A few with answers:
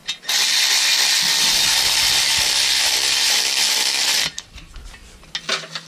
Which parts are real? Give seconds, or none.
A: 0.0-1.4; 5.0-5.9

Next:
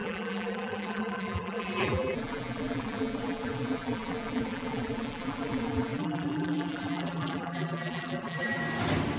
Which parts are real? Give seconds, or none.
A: 8.6-9.2

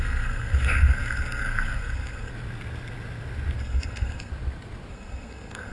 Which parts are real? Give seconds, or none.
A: 2.3-3.6; 4.3-4.9

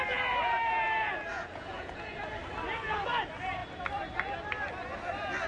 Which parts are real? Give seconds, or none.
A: 0.0-1.3; 2.2-5.5

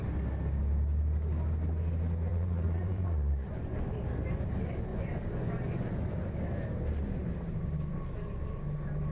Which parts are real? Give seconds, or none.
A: 0.0-2.3; 3.9-4.9; 5.9-9.1

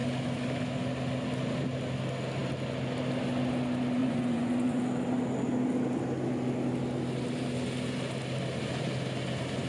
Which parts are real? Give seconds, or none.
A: 0.0-4.0; 4.8-9.7